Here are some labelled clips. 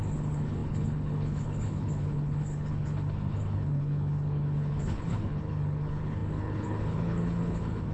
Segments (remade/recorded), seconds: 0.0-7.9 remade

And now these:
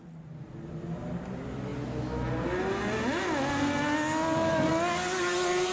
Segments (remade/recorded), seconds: 0.0-5.7 recorded

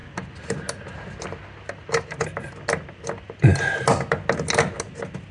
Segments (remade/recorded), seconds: 0.0-5.3 recorded

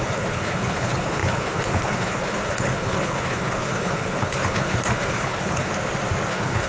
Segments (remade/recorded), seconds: 0.0-5.7 remade; 5.7-6.3 recorded; 6.3-6.7 remade

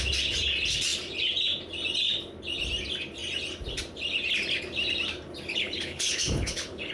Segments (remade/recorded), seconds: 0.0-5.5 recorded; 5.5-6.9 remade

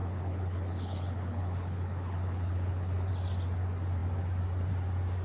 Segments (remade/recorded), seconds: 0.0-3.1 remade; 3.1-5.2 recorded